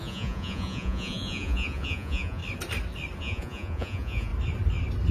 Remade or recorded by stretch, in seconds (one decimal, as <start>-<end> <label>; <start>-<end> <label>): 0.0-2.4 remade; 2.4-3.2 recorded; 3.2-4.3 remade; 4.3-5.1 recorded